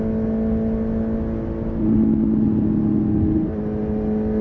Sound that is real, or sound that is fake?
real